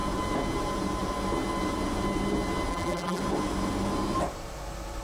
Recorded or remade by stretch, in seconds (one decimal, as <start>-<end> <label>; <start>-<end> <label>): 0.0-2.7 recorded; 2.7-3.2 remade; 3.2-5.0 recorded